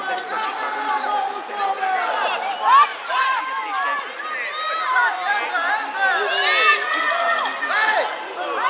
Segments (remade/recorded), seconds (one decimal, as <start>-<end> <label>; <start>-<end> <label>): 0.0-2.9 recorded; 2.9-3.4 remade; 3.4-8.7 recorded